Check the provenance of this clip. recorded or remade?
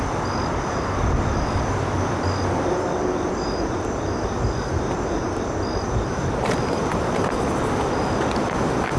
recorded